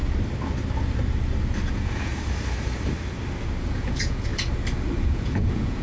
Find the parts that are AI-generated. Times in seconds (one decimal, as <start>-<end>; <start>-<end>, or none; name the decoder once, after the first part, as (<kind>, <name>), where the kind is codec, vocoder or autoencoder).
1.7-2.1 (vocoder, Vocos); 3.6-4.3; 5.1-5.8